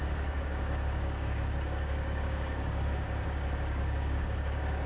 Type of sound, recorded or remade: remade